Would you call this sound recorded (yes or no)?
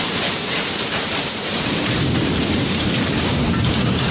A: no